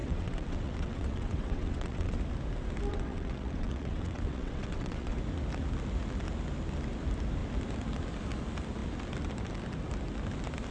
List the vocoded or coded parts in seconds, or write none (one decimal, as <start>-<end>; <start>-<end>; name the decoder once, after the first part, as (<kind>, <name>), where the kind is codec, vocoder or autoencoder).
0.0-2.2 (vocoder, WaveNeXt); 2.9-5.1